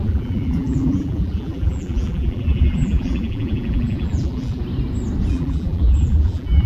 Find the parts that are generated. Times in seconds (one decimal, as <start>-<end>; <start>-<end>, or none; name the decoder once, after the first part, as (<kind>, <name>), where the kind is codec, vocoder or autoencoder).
0.0-4.6 (vocoder, BigVGAN v2); 5.3-6.7